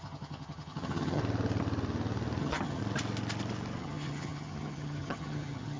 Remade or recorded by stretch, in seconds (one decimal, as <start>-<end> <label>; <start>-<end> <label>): 0.0-1.2 remade; 1.2-2.4 recorded; 2.4-2.8 remade; 2.8-3.8 recorded; 3.8-5.8 remade